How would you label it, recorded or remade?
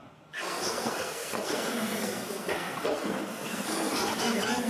remade